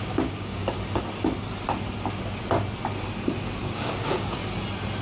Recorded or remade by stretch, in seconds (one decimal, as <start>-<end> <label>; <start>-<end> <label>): 0.0-0.6 remade; 0.6-3.6 recorded; 3.6-4.4 remade; 4.4-5.0 recorded